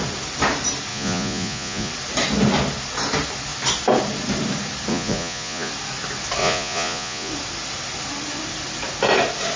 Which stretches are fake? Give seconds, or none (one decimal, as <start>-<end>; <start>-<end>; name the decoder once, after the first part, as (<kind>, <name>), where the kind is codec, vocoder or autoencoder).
0.9-1.9 (vocoder, Vocos); 4.9-5.7; 6.4-7.3